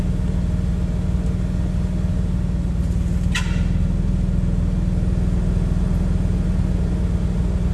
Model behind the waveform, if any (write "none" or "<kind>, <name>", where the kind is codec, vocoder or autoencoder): none